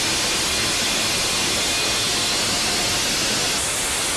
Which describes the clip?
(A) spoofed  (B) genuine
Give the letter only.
B